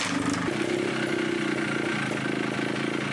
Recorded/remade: recorded